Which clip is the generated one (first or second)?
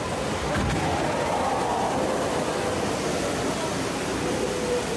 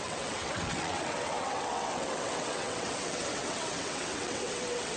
second